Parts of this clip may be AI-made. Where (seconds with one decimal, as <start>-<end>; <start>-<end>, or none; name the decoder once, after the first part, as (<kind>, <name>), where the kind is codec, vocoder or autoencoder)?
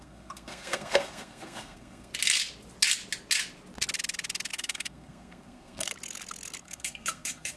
0.0-2.1 (codec, SNAC); 4.5-5.9; 6.6-7.6